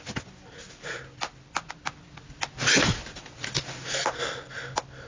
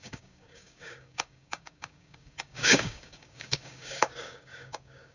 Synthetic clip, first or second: second